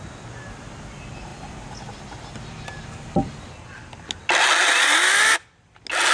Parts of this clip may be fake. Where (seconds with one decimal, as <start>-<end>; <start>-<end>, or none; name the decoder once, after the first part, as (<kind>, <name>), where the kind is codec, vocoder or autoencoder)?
none